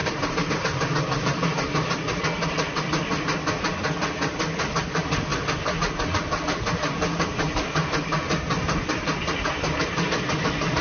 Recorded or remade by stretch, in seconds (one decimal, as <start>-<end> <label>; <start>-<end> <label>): 0.0-0.5 remade; 0.5-7.1 recorded; 7.1-10.1 remade; 10.1-10.8 recorded